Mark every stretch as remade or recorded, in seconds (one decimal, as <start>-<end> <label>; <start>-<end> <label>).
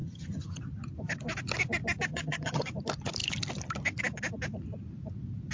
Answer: 0.0-0.6 remade; 0.6-2.1 recorded; 2.1-2.7 remade; 2.7-5.5 recorded